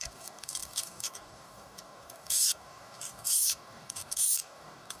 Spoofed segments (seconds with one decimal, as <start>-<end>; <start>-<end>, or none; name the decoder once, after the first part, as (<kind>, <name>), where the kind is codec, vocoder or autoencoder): 0.0-5.0 (codec, DAC)